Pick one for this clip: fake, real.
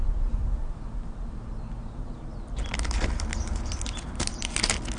real